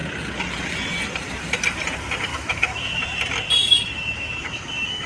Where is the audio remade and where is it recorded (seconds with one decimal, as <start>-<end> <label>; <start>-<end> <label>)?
0.0-2.3 recorded; 2.3-3.0 remade; 3.0-3.6 recorded; 3.6-5.1 remade